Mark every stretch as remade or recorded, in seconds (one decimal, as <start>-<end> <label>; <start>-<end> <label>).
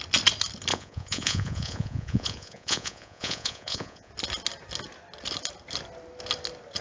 0.0-0.7 recorded; 0.7-4.1 remade; 4.1-6.8 recorded